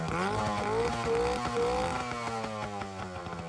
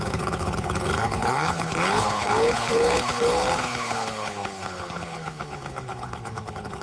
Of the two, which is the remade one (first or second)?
second